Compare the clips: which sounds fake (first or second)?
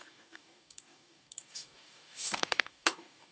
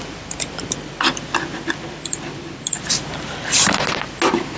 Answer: first